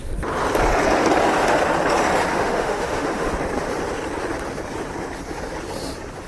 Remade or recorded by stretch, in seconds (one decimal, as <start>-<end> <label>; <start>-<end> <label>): 0.0-2.3 recorded; 2.3-3.3 remade; 3.3-6.3 recorded